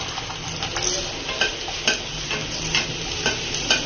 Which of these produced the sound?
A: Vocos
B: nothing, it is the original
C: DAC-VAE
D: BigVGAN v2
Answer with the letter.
B